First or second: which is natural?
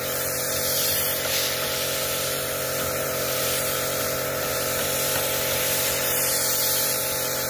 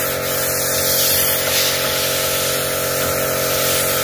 second